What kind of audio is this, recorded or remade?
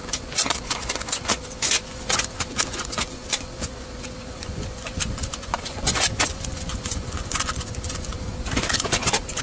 remade